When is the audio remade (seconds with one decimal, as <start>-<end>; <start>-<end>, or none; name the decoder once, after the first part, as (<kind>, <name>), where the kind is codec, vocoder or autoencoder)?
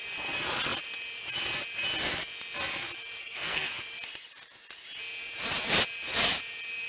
3.2-3.7 (codec, SNAC)